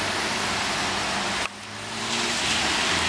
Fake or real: real